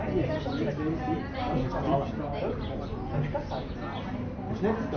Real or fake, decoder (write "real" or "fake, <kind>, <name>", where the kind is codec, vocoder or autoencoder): real